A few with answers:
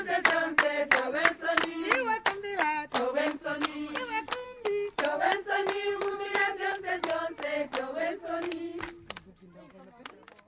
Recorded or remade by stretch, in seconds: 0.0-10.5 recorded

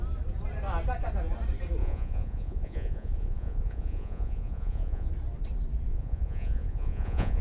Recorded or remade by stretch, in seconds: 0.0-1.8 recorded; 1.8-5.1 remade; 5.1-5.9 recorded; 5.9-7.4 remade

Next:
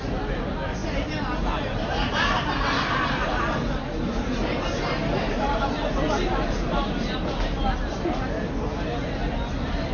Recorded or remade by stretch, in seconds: 0.0-9.9 recorded